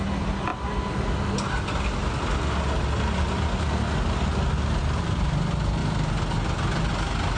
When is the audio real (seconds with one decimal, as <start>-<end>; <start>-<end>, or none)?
0.0-7.4